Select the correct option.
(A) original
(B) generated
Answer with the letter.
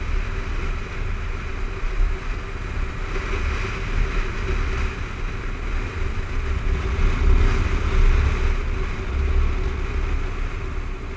A